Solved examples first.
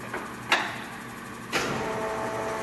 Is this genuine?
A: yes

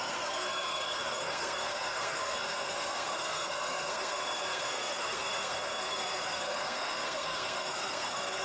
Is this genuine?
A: no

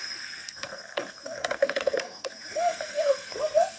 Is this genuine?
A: no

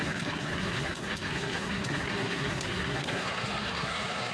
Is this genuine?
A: no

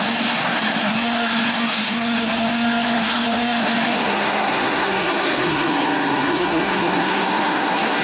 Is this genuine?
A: no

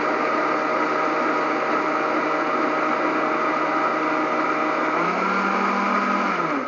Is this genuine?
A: yes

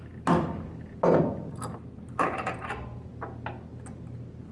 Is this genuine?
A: yes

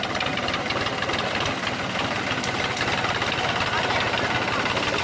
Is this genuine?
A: yes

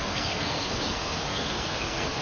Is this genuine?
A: no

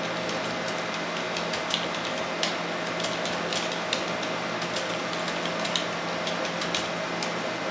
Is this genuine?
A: yes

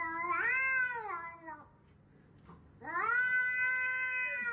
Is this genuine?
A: yes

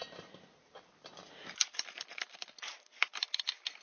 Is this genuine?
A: yes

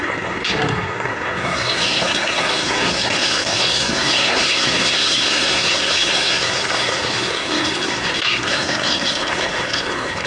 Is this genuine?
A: no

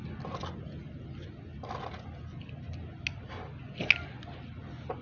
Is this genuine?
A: yes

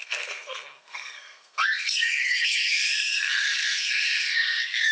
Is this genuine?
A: no